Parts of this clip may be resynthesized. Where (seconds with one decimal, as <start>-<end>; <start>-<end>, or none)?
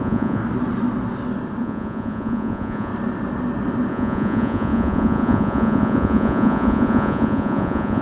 0.0-0.4; 1.6-2.9; 3.9-8.0